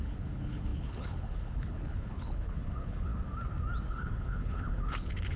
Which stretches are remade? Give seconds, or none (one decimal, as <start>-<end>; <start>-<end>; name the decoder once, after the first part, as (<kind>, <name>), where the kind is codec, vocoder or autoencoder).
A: 0.0-3.1 (codec, HILCodec); 3.9-5.4